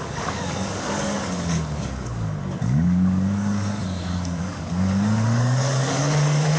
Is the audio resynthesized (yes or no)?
yes